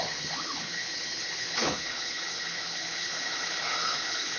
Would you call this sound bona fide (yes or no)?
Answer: no